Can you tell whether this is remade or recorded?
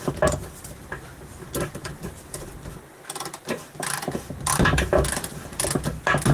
recorded